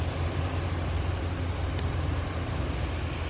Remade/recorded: recorded